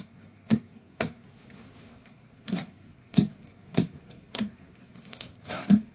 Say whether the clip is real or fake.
fake